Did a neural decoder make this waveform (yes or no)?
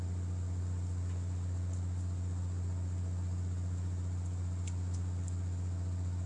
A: no